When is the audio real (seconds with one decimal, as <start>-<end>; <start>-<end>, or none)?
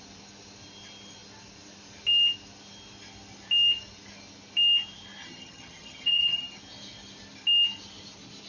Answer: 0.0-5.2; 6.6-8.5